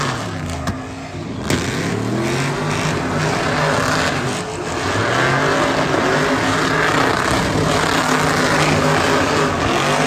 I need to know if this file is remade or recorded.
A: recorded